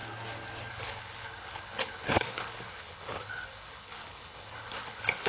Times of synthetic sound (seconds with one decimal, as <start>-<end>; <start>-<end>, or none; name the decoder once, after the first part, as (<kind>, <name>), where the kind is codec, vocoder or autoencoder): 0.7-5.3 (codec, HILCodec)

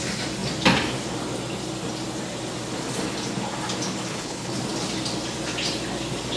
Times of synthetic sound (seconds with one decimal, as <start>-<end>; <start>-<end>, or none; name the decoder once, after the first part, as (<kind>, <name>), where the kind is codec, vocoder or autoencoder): 4.1-4.6 (codec, HILCodec)

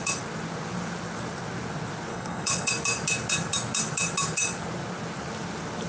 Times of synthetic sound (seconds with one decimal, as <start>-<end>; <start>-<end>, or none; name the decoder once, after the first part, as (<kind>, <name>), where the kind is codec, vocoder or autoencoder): 2.1-2.7 (codec, HILCodec)